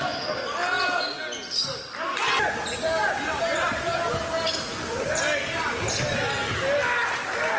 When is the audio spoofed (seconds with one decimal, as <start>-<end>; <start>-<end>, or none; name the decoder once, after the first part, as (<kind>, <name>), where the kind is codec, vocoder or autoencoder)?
none